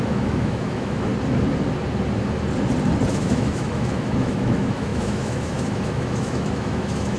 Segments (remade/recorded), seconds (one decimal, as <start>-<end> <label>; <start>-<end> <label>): 0.0-1.1 remade; 1.1-3.1 recorded; 3.1-7.2 remade